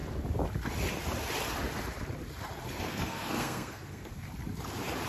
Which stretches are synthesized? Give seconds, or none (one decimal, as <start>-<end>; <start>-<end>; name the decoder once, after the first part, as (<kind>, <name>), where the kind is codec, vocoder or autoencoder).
2.8-4.1 (codec, SNAC)

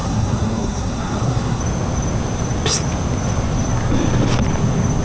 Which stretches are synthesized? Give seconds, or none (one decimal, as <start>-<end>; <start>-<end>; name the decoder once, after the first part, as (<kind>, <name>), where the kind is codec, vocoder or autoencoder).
0.0-1.6 (codec, SNAC)

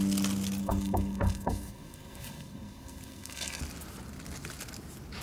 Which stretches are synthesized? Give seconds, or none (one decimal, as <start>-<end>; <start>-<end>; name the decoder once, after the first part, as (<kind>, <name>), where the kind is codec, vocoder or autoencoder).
0.6-3.6 (codec, SNAC)

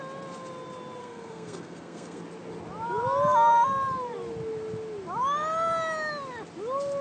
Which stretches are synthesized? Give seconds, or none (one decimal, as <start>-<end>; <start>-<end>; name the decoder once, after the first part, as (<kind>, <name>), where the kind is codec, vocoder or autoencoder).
1.0-2.2 (codec, SNAC)

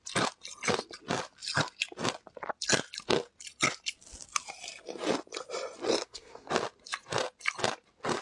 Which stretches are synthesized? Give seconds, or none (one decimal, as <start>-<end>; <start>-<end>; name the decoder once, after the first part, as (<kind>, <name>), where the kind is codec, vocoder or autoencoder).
5.9-6.5 (codec, SNAC)

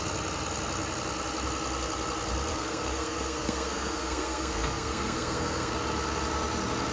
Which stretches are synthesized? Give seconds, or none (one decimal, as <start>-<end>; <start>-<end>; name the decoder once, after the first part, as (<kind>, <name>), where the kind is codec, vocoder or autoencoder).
2.5-5.7 (codec, SNAC)

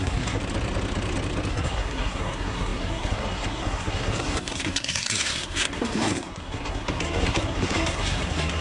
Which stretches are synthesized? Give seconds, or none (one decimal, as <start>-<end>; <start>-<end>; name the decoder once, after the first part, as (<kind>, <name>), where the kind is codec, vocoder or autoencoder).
0.0-0.4 (codec, SNAC); 1.5-8.6